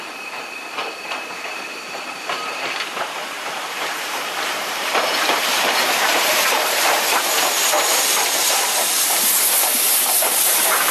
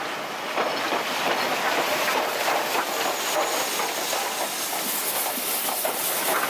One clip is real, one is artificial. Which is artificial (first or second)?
first